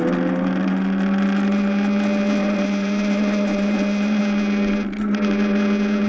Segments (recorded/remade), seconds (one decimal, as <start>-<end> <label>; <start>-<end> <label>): 0.0-2.4 recorded; 2.4-4.2 remade; 4.2-6.1 recorded